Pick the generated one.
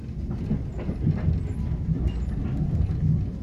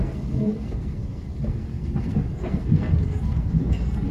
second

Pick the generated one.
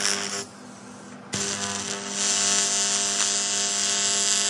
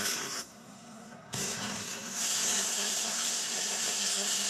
second